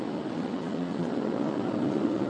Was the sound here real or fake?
fake